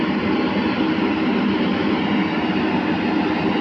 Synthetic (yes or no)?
no